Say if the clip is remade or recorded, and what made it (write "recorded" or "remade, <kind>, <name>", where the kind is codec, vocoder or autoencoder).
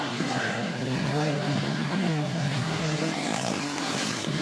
remade, codec, SNAC